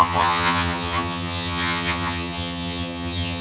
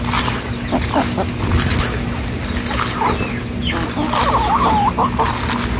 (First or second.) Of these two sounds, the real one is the second